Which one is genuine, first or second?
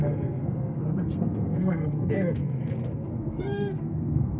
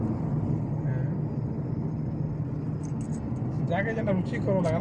second